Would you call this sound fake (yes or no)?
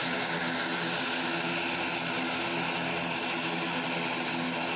yes